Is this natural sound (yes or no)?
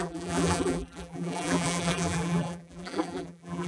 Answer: no